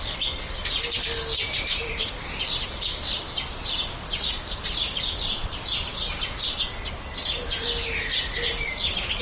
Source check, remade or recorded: remade